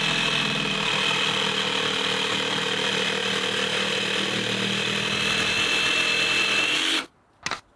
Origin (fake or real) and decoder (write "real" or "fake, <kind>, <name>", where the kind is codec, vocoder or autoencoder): real